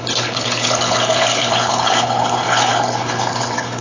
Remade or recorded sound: remade